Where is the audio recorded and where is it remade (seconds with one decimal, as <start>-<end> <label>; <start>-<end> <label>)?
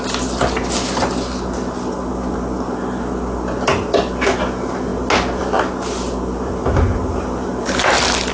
0.0-8.3 recorded